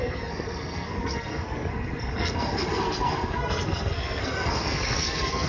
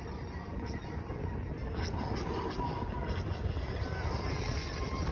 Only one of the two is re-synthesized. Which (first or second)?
first